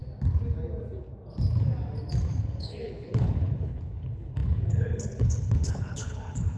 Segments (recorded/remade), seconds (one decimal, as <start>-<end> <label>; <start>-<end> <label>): 0.0-2.4 recorded; 2.4-6.6 remade